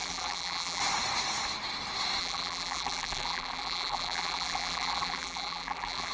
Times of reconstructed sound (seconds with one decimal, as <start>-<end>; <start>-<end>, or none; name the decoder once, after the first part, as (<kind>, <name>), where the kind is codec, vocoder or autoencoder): 0.0-0.8 (vocoder, BigVGAN v2); 2.2-6.1